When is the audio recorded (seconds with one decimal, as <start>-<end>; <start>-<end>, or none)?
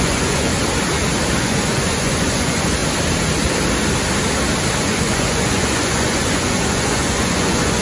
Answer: 0.5-1.4; 2.8-4.8